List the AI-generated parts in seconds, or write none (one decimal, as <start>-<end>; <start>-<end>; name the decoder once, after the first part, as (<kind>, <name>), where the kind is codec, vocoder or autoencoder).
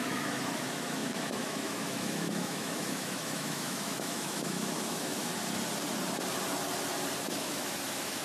0.0-5.3 (autoencoder, DAC-VAE); 7.3-8.2